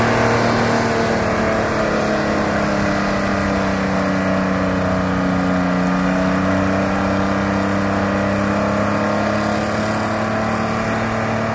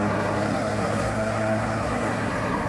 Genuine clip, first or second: first